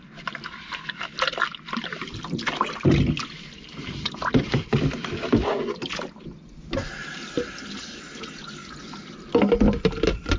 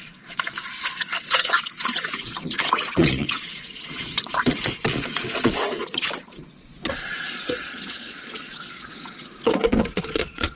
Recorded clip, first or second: first